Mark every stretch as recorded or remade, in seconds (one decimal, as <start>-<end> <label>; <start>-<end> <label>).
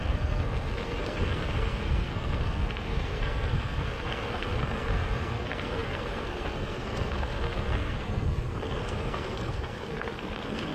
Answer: 0.0-10.7 remade